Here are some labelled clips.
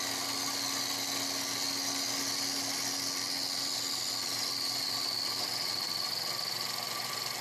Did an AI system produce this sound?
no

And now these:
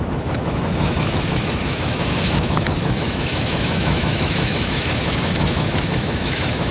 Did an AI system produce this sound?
yes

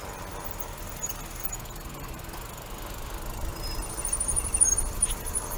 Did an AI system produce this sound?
no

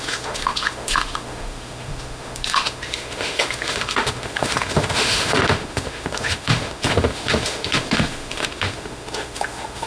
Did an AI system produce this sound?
yes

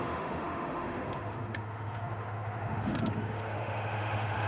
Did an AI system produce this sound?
yes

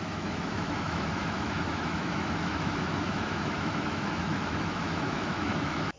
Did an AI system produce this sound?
yes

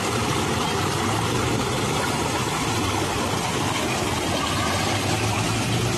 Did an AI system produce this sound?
no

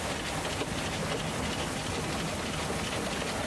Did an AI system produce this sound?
no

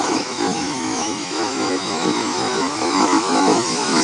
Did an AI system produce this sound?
yes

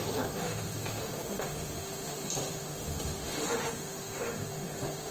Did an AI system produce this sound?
yes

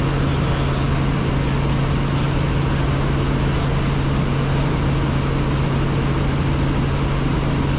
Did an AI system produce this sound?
no